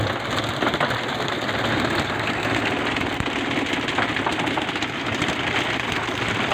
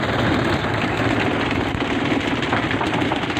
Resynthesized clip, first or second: second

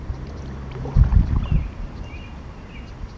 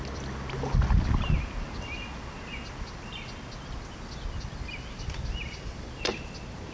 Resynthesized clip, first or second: first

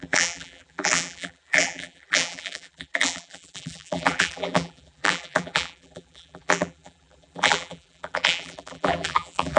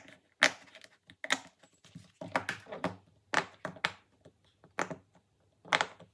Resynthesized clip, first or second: first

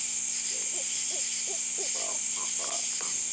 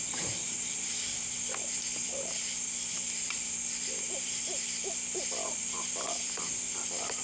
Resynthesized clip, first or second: second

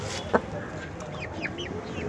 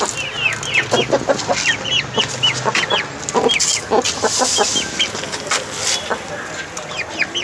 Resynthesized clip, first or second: first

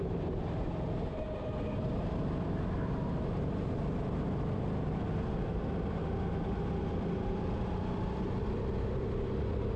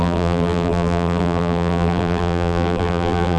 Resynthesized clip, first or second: second